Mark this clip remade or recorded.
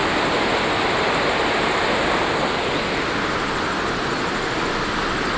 recorded